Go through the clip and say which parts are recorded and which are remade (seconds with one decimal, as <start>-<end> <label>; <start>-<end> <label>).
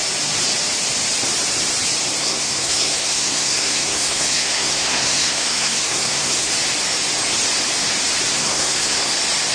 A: 0.0-2.2 recorded; 2.2-6.5 remade; 6.5-8.3 recorded; 8.3-9.1 remade; 9.1-9.5 recorded